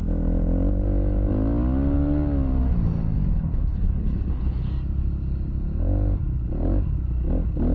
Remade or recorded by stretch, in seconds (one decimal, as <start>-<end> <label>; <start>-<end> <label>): 0.0-3.3 recorded; 3.3-4.7 remade; 4.7-7.7 recorded